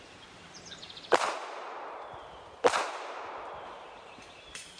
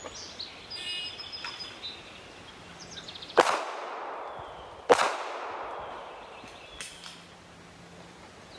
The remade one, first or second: first